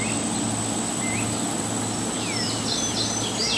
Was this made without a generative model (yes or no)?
yes